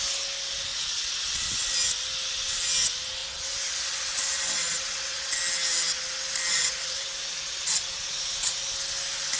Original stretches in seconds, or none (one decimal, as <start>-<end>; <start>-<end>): 0.0-0.7; 1.6-3.2; 5.4-6.5; 8.6-9.4